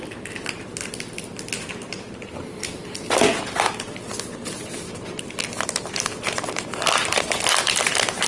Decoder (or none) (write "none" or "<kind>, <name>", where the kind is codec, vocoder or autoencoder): none